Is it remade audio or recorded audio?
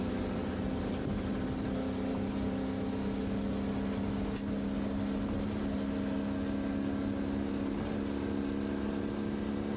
recorded